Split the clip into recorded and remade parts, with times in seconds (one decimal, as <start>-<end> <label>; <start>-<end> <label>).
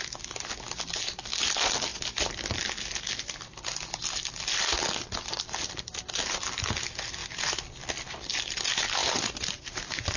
0.0-9.0 recorded; 9.0-10.2 remade